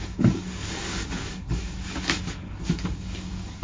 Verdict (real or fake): fake